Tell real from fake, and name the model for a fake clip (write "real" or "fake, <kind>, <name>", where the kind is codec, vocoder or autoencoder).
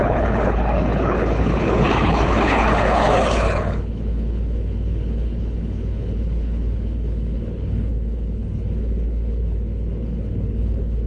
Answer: fake, codec, HILCodec